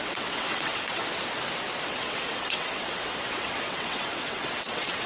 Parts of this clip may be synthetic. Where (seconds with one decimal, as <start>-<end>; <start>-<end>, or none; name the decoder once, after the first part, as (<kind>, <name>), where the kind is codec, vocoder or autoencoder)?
0.0-1.0 (vocoder, WaveNeXt); 1.8-5.1